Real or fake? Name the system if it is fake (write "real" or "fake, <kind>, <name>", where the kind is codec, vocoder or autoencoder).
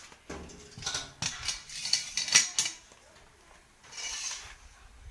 real